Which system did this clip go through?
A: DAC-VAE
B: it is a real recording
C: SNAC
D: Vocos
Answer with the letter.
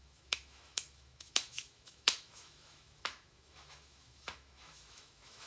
A